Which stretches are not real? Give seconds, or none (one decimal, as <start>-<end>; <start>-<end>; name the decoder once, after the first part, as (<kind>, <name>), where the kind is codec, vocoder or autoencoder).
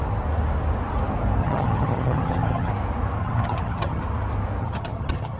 1.4-2.7 (vocoder, HiFi-GAN); 3.2-4.0; 4.6-5.4